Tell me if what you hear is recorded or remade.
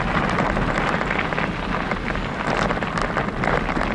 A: recorded